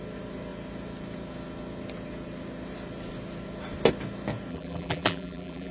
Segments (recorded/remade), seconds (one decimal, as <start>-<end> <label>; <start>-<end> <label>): 0.0-4.5 recorded; 4.5-5.7 remade